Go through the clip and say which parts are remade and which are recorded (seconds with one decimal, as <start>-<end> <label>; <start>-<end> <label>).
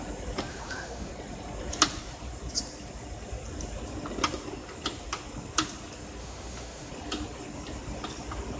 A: 0.0-0.5 recorded; 0.5-1.1 remade; 1.1-6.2 recorded; 6.2-6.9 remade; 6.9-8.6 recorded